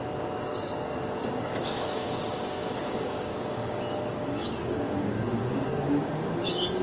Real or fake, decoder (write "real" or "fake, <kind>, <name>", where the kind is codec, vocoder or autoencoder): fake, codec, DAC